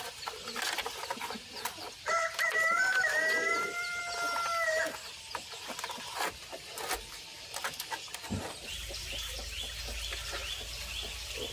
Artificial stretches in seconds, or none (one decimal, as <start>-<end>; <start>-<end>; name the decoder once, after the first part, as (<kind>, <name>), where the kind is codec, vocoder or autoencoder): 2.9-4.0 (vocoder, BigVGAN v2); 7.3-8.9; 10.4-11.5